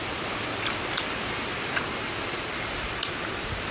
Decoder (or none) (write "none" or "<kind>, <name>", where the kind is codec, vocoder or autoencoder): none